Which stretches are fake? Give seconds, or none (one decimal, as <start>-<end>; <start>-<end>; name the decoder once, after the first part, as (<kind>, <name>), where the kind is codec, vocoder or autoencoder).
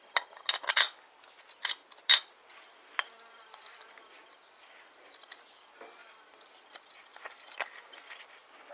none